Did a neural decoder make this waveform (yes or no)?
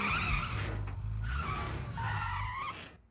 no